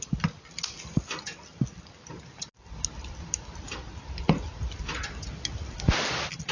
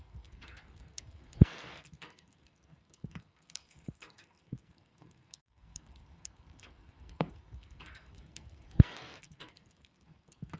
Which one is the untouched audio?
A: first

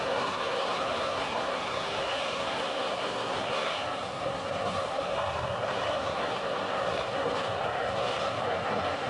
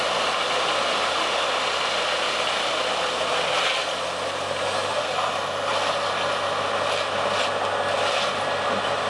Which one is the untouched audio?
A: second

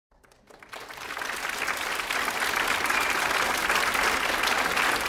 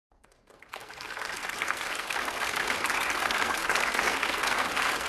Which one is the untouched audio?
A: first